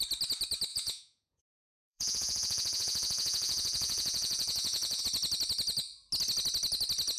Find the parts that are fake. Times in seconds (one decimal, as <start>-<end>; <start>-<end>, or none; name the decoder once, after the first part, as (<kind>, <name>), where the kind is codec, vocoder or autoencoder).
0.7-5.0 (vocoder, Vocos)